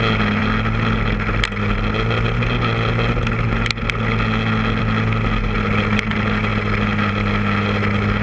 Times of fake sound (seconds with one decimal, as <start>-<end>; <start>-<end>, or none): none